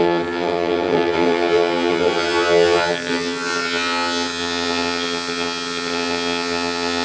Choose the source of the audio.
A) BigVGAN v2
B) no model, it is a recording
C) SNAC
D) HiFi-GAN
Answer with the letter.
D